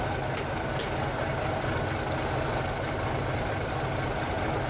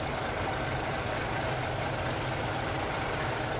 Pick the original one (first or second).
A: first